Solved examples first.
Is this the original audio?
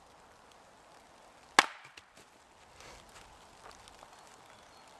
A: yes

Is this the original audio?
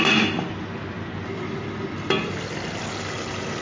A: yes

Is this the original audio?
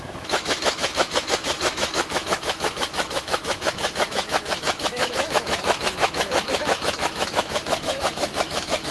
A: no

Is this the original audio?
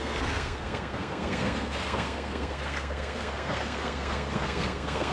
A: no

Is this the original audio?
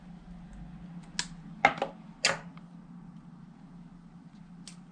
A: yes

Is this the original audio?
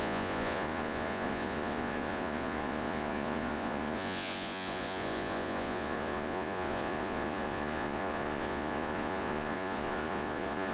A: no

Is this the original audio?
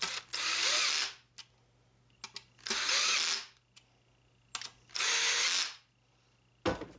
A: yes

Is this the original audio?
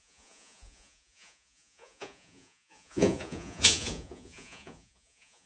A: no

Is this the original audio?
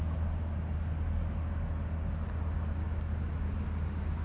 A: yes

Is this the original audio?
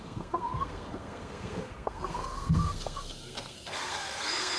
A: no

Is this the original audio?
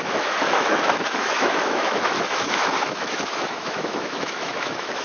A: no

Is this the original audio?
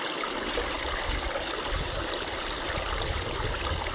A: yes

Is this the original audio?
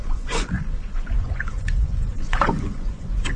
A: no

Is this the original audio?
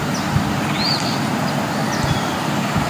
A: yes